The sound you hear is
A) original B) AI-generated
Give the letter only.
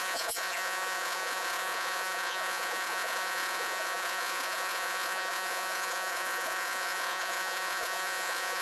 B